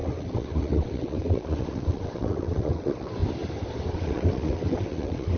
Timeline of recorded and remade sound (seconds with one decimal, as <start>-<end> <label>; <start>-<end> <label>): 0.0-3.2 remade; 3.2-3.9 recorded; 3.9-5.4 remade

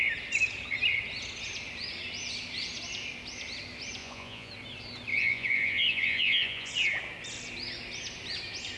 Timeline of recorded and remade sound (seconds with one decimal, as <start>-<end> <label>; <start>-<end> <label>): 0.0-4.0 recorded; 4.0-4.5 remade; 4.5-5.1 recorded; 5.1-6.7 remade; 6.7-8.8 recorded

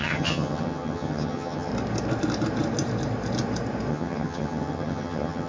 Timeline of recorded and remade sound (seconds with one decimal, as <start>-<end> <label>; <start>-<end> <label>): 0.0-1.7 remade; 1.7-3.9 recorded; 3.9-5.5 remade

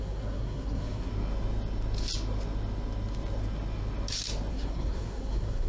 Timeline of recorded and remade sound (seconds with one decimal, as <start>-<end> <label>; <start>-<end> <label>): 0.0-1.1 remade; 1.1-4.5 recorded; 4.5-5.7 remade

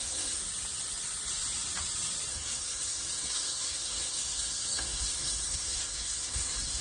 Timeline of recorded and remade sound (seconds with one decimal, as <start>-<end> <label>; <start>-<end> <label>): 0.0-0.4 remade; 0.4-2.3 recorded; 2.3-6.8 remade